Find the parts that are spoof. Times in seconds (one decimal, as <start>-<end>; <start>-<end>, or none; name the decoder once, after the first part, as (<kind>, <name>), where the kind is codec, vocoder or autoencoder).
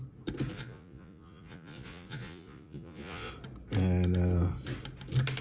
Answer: 0.5-3.3 (vocoder, Vocos)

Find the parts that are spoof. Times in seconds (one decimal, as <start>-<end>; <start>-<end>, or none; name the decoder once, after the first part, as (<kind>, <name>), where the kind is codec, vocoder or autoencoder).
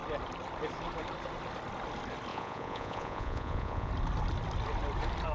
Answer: 2.3-3.9 (vocoder, Vocos)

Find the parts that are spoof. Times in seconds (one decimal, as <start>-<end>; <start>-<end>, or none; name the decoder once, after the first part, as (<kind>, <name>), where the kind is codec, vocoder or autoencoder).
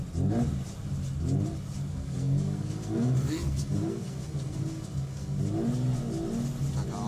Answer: 1.9-5.4 (codec, SNAC)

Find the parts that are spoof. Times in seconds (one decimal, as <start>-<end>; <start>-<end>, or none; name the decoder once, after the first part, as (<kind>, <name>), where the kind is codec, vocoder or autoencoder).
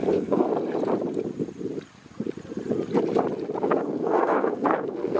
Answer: 0.0-0.5 (codec, SNAC); 3.6-5.2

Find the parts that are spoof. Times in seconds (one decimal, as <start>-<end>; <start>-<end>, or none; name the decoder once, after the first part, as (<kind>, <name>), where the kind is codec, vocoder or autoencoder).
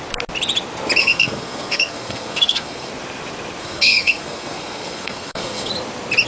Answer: 1.0-2.9 (codec, SNAC); 3.6-5.7